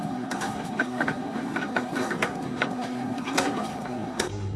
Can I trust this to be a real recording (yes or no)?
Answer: no